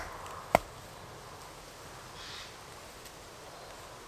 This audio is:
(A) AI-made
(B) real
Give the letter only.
B